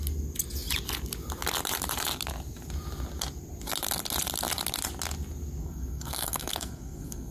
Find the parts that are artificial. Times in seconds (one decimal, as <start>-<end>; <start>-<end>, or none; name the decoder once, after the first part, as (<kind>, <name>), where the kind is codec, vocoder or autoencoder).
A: 5.6-7.3 (codec, SNAC)